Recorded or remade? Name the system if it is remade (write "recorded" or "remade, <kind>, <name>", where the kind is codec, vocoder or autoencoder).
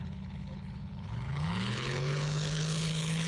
remade, codec, HILCodec